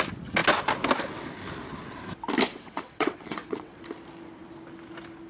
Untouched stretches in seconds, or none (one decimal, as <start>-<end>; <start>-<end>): 0.0-2.5; 3.8-5.3